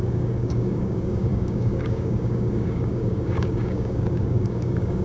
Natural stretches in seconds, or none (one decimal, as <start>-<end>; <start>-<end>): none